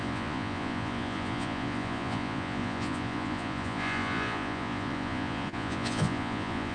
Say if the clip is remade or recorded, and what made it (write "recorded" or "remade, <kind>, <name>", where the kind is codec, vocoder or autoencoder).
remade, vocoder, Vocos